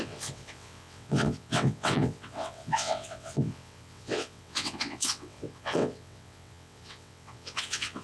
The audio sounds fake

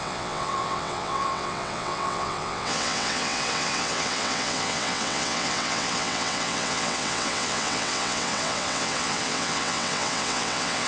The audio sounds fake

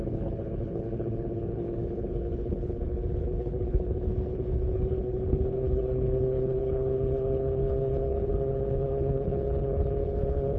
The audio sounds fake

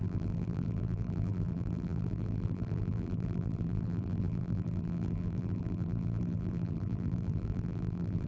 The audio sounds fake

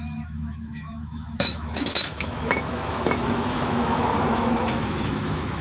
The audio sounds fake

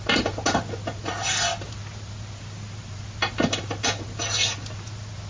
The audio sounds real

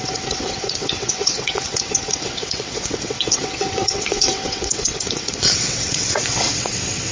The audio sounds fake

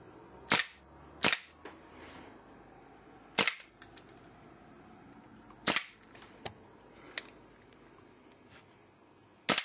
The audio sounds real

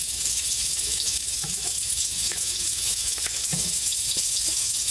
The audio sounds fake